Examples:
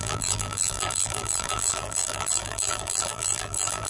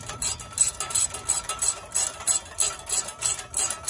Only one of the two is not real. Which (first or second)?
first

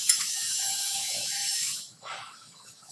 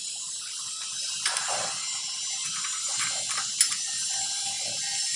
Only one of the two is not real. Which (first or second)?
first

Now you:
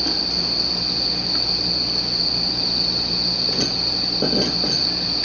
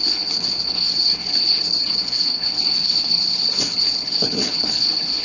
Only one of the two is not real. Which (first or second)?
second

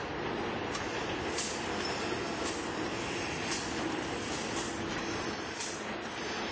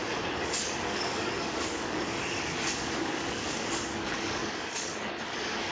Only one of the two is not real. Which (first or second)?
second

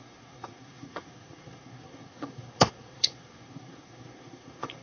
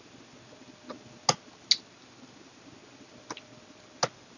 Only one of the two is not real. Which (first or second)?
first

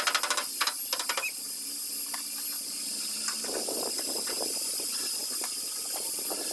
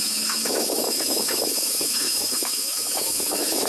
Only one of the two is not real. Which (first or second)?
second